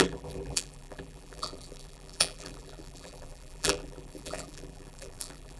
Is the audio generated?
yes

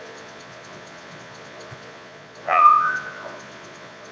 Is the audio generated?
yes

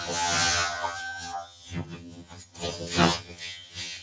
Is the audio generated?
yes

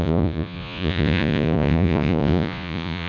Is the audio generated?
yes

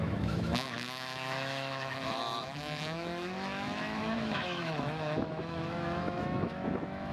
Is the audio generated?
yes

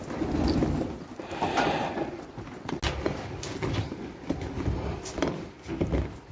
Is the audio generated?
no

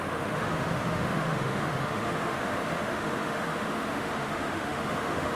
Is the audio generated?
yes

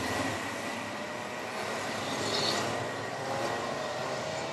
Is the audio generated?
no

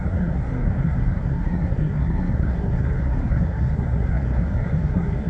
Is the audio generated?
yes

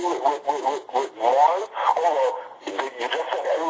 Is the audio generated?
no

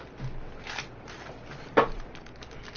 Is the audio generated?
no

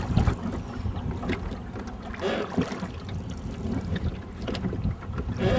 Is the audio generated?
no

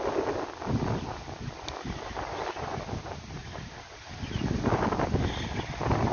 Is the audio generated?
no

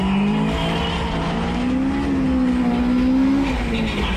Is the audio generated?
no